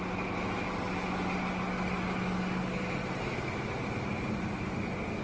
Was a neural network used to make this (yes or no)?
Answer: no